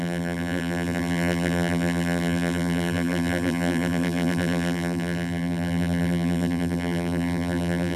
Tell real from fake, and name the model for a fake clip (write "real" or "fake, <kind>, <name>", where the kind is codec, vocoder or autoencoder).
fake, vocoder, BigVGAN v2